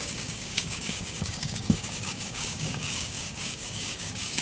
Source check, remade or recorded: remade